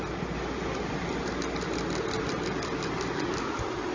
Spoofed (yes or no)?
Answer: no